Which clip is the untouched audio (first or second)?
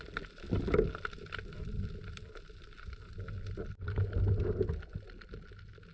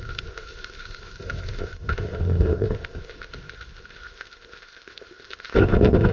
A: first